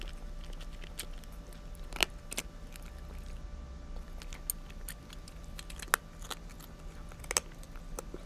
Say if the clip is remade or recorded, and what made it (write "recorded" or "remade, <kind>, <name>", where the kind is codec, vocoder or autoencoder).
recorded